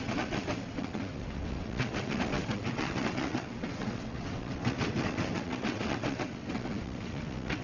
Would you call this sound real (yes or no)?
no